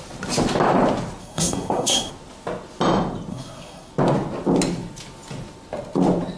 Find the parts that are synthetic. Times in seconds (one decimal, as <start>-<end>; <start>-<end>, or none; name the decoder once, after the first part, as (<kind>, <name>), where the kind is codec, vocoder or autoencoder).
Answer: 1.2-2.1 (codec, SNAC); 3.3-3.9